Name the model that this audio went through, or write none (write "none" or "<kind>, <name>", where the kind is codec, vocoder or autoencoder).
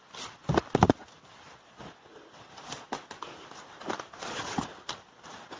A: none